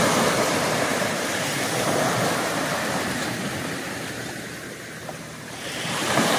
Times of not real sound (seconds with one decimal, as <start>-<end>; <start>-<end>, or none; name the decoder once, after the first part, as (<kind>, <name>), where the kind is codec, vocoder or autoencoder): 0.9-3.8 (vocoder, BigVGAN v2); 5.0-6.4